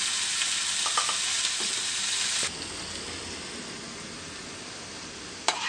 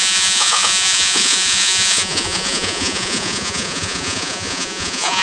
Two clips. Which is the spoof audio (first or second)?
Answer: second